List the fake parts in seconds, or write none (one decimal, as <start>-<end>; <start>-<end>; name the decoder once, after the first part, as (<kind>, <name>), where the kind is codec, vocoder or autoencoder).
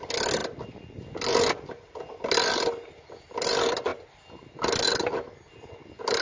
none